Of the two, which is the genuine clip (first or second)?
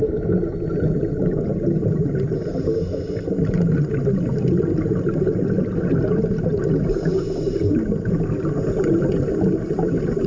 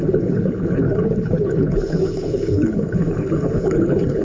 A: first